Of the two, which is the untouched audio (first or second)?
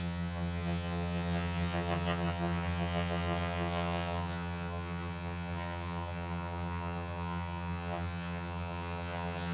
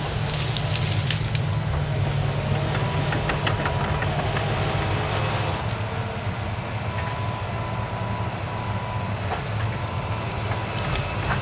second